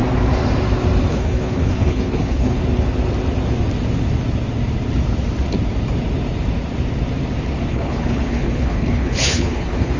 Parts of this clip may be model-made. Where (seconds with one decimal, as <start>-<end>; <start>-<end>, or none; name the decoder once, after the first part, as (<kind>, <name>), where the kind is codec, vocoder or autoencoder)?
1.1-2.6 (codec, HILCodec); 7.7-10.0